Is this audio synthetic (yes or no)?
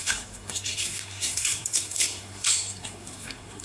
yes